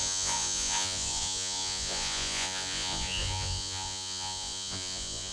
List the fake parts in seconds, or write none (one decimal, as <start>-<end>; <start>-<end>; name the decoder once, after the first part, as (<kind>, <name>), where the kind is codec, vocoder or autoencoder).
0.0-5.3 (vocoder, Vocos)